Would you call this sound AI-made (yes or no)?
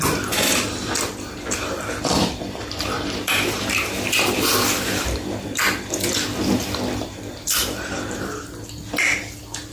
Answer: yes